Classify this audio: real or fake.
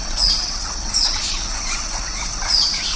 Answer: fake